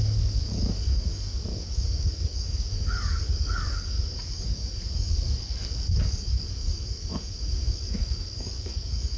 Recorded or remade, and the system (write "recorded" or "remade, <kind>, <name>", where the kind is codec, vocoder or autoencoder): remade, codec, DAC